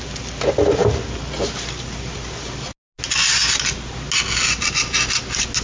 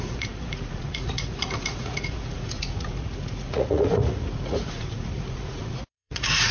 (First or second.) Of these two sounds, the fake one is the second